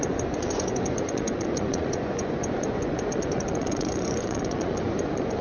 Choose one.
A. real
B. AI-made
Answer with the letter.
B